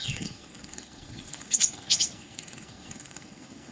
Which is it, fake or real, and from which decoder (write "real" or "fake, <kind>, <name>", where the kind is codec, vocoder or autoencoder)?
fake, codec, SNAC